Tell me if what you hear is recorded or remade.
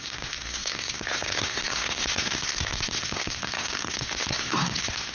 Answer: remade